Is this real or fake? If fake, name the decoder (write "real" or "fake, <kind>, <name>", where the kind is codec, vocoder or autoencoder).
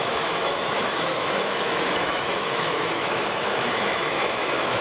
fake, autoencoder, DAC-VAE